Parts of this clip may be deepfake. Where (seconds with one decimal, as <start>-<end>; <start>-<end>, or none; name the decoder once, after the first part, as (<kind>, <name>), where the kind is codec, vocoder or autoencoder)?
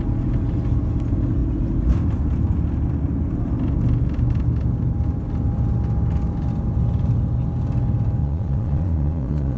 8.2-9.6 (vocoder, Vocos)